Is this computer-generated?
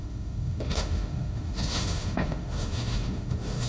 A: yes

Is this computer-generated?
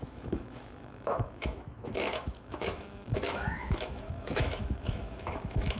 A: yes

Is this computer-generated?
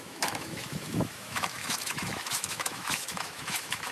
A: yes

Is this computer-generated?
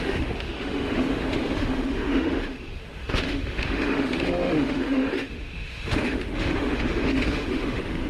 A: yes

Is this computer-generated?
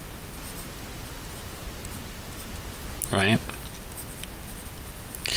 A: no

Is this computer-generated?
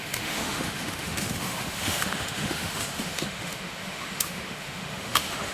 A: yes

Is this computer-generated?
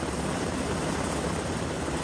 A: no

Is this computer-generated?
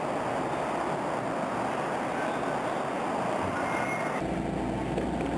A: no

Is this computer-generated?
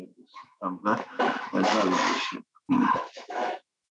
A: yes